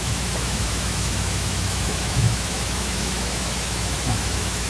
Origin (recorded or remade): remade